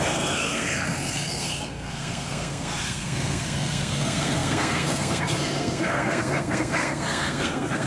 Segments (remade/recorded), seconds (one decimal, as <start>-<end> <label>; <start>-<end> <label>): 0.0-7.9 remade